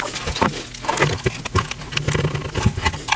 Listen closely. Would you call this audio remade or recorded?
recorded